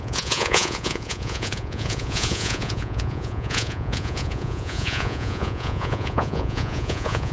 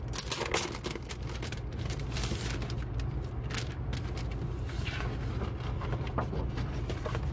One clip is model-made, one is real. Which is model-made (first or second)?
first